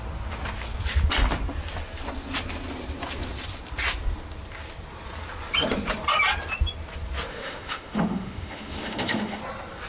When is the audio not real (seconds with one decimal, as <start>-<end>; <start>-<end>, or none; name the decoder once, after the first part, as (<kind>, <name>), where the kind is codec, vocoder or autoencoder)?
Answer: 7.3-9.4 (autoencoder, DAC-VAE)